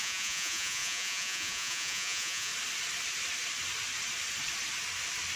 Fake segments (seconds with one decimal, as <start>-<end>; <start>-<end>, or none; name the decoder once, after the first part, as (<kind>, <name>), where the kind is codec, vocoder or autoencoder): 0.0-2.5 (vocoder, Vocos)